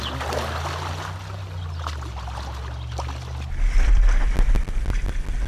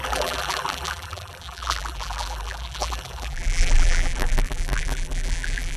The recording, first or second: first